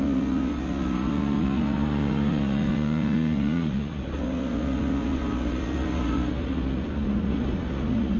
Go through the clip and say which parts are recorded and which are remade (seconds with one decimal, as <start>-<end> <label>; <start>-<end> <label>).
0.0-8.2 remade